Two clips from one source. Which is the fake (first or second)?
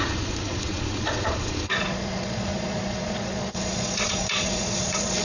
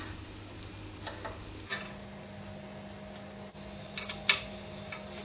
first